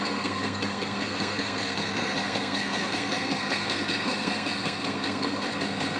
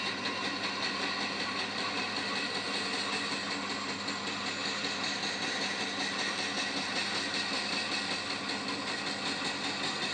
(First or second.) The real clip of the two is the second